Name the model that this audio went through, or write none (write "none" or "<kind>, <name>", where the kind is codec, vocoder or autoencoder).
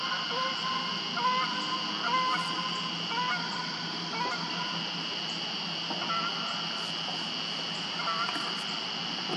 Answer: none